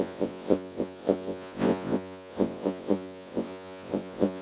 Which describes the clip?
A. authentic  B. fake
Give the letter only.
B